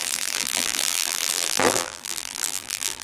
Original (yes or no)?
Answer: no